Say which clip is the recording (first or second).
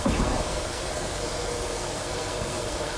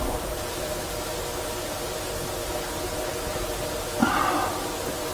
second